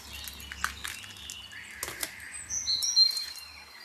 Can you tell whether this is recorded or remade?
recorded